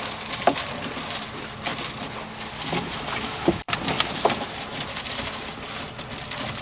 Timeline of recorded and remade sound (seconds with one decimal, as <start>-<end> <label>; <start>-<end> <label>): 0.0-6.6 recorded